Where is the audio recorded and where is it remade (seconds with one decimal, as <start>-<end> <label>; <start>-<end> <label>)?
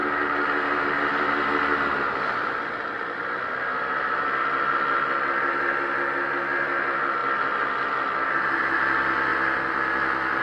0.0-10.4 recorded